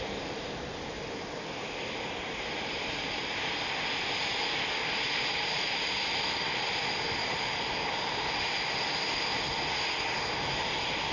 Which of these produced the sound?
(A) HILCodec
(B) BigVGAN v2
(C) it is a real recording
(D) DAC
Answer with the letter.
C